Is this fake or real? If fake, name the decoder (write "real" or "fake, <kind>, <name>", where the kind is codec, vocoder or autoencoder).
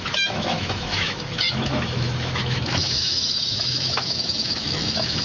fake, autoencoder, DAC-VAE